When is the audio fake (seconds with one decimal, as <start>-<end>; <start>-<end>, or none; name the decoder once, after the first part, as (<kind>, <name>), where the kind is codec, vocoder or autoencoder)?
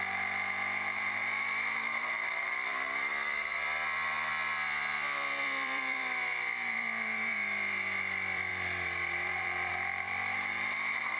0.0-11.2 (vocoder, BigVGAN v2)